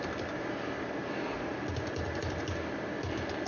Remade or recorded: recorded